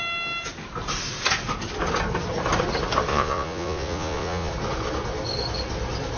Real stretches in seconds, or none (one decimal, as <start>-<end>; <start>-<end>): 0.0-3.1; 4.5-6.2